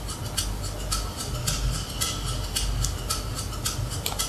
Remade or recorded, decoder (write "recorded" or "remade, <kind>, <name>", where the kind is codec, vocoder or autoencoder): recorded